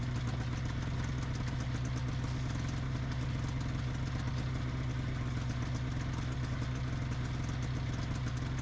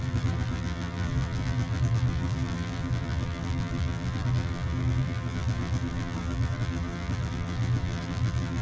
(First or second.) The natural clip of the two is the first